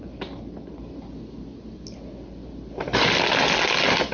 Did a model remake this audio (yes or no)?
no